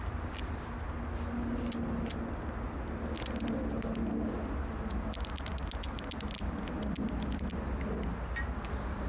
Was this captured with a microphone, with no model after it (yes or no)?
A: yes